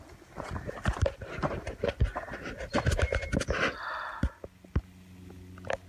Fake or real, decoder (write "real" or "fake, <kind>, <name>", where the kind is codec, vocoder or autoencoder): real